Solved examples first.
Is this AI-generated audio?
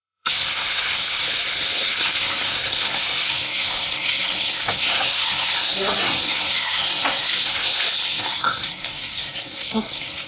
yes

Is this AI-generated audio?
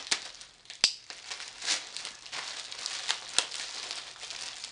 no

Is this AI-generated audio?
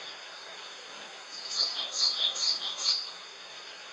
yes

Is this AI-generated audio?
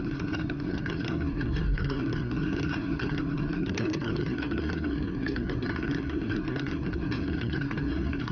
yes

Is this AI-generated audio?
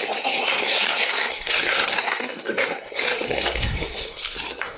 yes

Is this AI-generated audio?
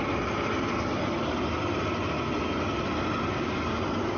no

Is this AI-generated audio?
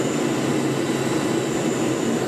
no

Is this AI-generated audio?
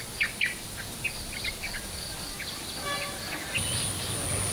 no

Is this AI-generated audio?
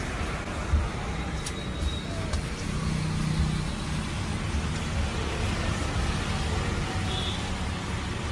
no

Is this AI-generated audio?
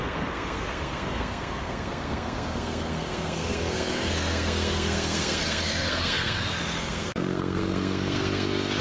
yes